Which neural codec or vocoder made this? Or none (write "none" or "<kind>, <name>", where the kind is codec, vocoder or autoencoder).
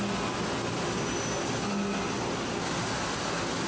none